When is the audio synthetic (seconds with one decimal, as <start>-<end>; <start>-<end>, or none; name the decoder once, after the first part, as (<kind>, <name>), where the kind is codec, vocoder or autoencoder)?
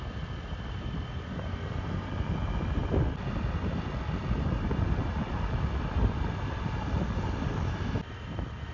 none